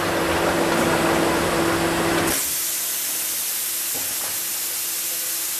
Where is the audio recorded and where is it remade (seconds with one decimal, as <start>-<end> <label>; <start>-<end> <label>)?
0.0-5.6 recorded